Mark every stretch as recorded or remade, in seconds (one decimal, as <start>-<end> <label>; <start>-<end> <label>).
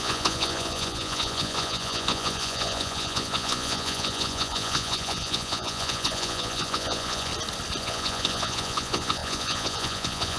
0.0-7.3 remade; 7.3-7.8 recorded; 7.8-10.4 remade